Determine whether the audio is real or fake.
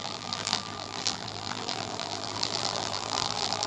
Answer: fake